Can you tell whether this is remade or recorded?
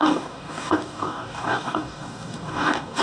remade